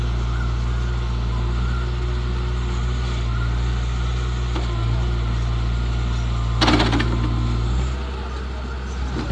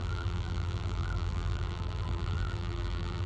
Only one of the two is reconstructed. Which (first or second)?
second